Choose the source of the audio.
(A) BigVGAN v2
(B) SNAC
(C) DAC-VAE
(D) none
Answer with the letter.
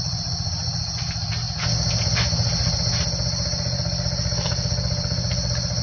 D